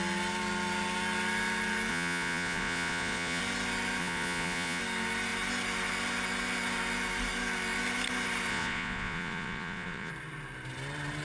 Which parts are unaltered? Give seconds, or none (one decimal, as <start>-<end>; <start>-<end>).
0.0-1.9; 3.4-4.0; 4.8-8.5; 10.1-11.2